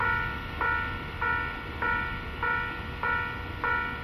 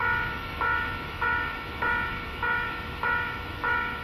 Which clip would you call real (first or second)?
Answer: first